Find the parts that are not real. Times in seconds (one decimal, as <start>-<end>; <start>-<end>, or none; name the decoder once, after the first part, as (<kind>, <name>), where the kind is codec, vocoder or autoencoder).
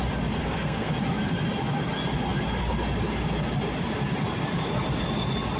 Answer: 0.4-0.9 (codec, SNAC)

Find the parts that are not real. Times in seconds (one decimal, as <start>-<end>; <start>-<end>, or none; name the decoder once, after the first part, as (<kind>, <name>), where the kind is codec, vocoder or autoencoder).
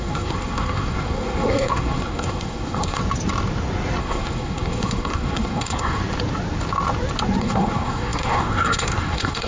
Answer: 0.0-3.0 (codec, SNAC); 4.0-6.0; 7.4-9.5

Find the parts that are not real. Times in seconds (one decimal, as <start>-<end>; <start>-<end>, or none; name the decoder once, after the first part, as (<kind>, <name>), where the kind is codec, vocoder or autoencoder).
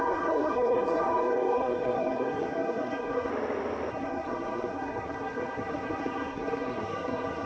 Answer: 0.0-3.3 (codec, SNAC); 3.9-7.5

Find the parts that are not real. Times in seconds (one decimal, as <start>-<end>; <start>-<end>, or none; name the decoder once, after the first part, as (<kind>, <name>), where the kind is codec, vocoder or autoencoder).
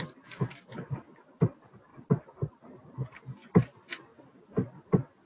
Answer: none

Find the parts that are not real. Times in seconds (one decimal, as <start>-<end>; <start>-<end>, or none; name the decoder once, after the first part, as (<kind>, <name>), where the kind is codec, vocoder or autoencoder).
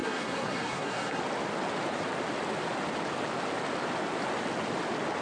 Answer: 0.0-1.2 (codec, SNAC)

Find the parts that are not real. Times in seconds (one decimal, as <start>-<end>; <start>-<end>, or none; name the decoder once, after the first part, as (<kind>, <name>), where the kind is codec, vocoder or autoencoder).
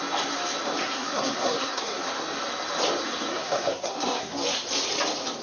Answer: 0.8-2.1 (codec, SNAC); 3.3-4.3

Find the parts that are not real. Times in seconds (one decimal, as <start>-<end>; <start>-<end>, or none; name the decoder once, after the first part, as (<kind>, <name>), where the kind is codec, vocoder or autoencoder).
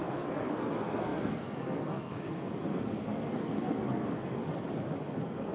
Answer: 0.0-4.4 (codec, SNAC); 5.1-5.5